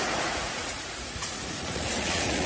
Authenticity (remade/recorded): remade